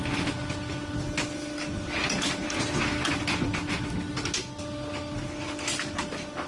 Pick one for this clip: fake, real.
real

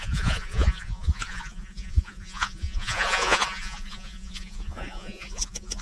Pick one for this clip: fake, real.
fake